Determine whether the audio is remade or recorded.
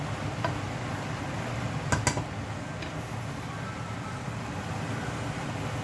recorded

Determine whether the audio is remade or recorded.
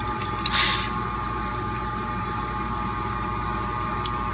recorded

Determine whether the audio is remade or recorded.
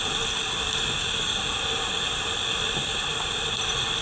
recorded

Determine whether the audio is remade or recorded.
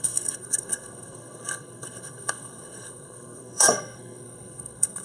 remade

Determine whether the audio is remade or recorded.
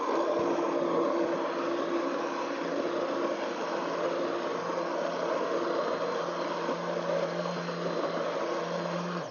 recorded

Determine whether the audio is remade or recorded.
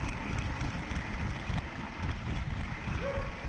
recorded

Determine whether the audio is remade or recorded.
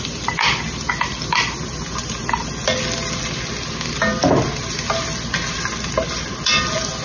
recorded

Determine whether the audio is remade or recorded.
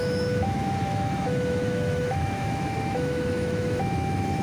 remade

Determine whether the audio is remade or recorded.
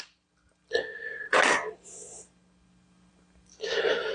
recorded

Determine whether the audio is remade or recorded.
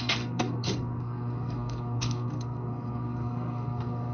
remade